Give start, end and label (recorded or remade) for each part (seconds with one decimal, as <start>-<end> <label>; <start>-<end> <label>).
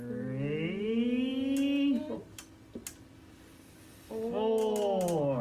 0.0-5.4 recorded